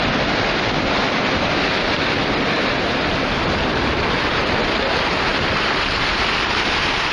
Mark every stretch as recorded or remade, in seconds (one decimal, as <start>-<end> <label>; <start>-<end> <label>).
0.0-7.1 recorded